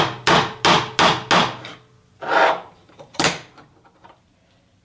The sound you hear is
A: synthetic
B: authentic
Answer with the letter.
B